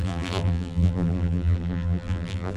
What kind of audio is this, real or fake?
fake